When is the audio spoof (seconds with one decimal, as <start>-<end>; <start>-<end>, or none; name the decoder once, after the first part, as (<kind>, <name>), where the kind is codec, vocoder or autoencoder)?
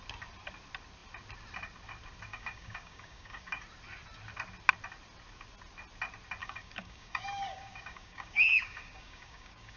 2.3-3.6 (codec, DAC); 6.4-9.8